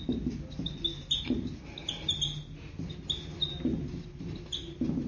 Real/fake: real